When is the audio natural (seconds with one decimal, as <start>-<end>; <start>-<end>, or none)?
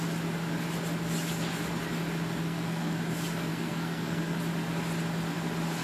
0.0-2.4; 3.0-3.5; 4.4-5.8